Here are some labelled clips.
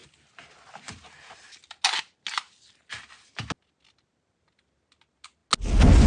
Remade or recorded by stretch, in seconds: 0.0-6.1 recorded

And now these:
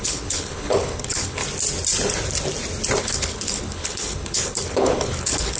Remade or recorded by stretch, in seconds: 0.0-1.4 remade; 1.4-3.0 recorded; 3.0-5.6 remade